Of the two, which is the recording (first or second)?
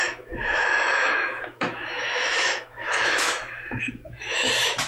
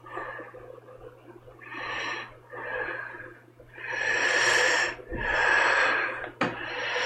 second